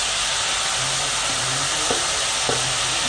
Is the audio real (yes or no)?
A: yes